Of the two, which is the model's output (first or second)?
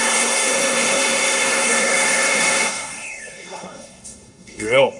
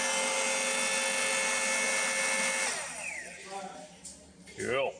first